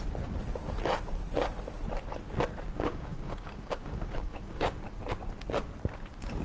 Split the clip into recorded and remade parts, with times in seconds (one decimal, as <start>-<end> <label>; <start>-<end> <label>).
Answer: 0.0-2.7 recorded; 2.7-4.8 remade; 4.8-6.4 recorded